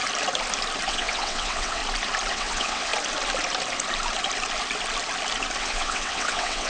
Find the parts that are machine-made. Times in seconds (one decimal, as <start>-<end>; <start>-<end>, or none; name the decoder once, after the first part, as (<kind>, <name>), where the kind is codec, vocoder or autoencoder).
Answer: 0.9-1.8 (vocoder, WaveNeXt); 2.3-2.9; 5.6-6.7